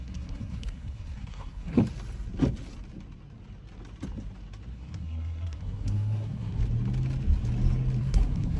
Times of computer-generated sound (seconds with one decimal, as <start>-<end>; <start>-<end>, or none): 0.0-1.8; 4.7-6.6; 8.0-8.6